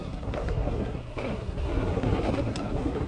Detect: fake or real fake